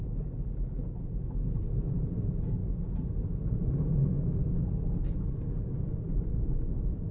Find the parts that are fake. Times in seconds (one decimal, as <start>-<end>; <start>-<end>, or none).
none